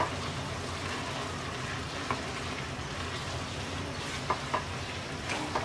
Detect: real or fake real